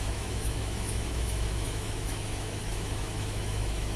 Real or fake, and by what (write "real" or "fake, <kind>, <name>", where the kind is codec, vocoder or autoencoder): fake, autoencoder, DAC-VAE